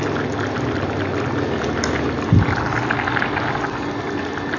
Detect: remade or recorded recorded